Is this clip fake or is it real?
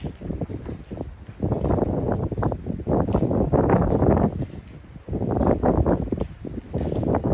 real